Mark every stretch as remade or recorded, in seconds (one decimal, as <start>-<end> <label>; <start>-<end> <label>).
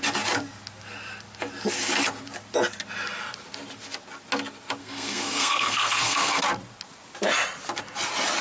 0.0-4.8 recorded; 4.8-6.4 remade; 6.4-8.4 recorded